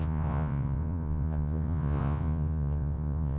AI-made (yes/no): yes